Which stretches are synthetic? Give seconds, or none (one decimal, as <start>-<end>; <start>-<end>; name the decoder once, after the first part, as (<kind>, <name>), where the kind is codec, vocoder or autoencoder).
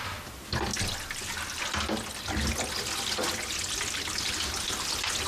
none